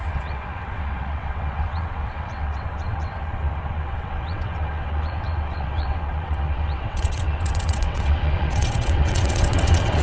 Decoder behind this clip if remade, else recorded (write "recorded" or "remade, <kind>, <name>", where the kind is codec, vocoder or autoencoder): remade, vocoder, WaveNeXt